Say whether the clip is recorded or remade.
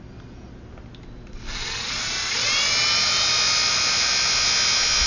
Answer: recorded